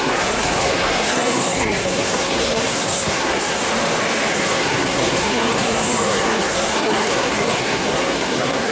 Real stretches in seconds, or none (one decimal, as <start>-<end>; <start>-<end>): 3.6-4.3